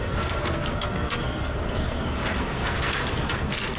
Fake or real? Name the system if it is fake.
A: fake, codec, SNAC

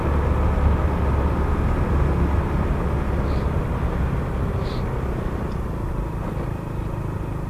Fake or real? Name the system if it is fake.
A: real